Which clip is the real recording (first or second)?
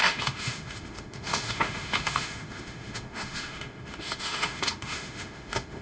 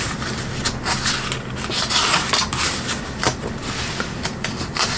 second